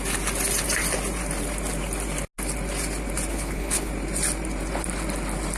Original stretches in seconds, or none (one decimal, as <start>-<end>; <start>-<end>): 0.0-3.3; 3.9-5.6

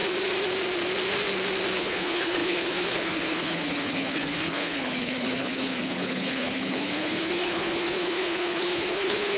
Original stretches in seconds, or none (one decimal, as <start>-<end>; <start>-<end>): 0.0-1.8